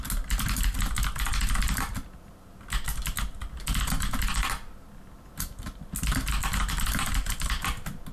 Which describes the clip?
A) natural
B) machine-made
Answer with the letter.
A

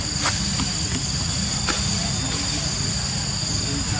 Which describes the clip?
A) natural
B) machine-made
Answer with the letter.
A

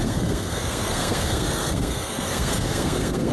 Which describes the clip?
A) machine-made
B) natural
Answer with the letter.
A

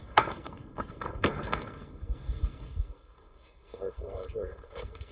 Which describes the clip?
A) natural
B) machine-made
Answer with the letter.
B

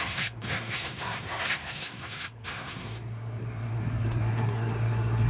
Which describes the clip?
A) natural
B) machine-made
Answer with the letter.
B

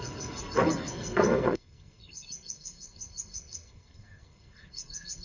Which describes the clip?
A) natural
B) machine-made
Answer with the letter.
B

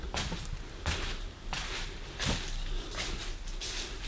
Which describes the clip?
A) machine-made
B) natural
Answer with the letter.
B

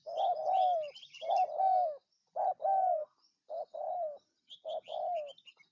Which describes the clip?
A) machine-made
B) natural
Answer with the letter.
B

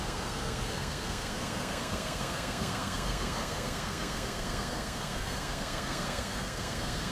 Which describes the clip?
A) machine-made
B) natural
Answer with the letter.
A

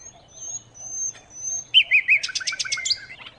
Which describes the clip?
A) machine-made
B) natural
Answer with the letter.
B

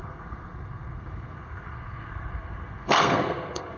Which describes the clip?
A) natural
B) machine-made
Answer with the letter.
B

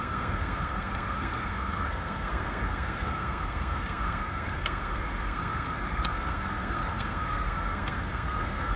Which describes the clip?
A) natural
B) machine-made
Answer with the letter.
B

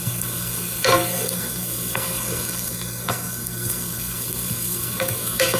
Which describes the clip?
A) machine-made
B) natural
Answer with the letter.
A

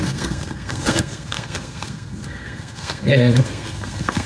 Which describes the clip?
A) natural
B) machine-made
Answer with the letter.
B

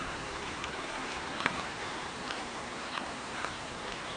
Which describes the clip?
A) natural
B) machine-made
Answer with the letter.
B